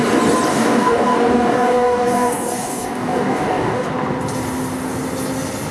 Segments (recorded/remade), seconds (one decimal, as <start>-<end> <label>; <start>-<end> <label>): 0.0-0.5 recorded; 0.5-3.9 remade; 3.9-5.7 recorded